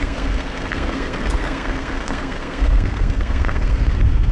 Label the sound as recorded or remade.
remade